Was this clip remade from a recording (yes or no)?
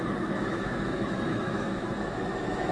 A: yes